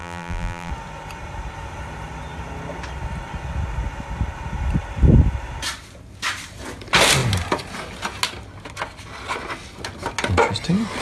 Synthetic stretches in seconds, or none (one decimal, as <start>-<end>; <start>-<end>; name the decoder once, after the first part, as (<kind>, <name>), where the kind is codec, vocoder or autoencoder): 0.0-0.7 (vocoder, BigVGAN v2)